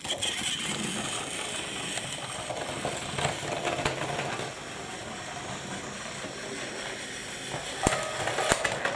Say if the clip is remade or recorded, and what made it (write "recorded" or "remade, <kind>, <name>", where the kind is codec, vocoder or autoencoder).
recorded